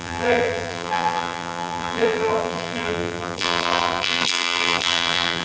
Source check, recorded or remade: remade